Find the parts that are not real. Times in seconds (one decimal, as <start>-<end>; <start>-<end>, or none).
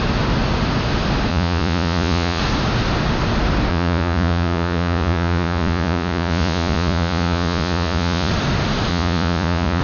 1.3-2.4; 3.7-8.3; 8.9-9.8